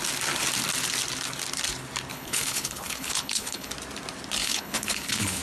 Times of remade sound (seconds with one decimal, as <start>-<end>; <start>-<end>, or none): 2.1-3.7; 4.4-5.4

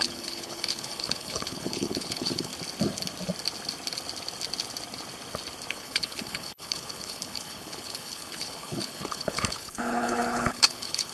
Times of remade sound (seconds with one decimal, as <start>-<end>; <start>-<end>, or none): 0.0-2.5; 5.7-11.1

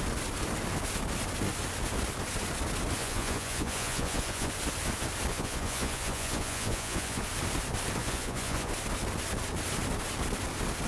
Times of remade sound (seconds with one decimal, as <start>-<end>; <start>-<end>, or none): 3.0-4.5; 5.3-7.2; 8.0-8.7

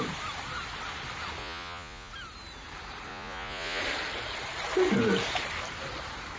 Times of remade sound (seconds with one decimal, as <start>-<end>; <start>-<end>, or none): 1.4-2.1; 3.1-3.8

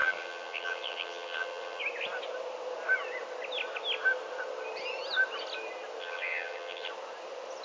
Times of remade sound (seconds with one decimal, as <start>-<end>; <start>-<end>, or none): 0.0-1.8; 6.0-6.9

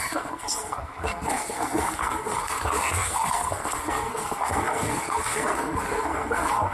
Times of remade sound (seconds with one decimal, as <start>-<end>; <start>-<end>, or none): 0.0-6.7

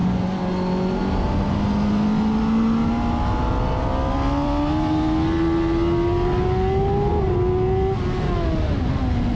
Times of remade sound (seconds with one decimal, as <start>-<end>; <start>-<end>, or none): none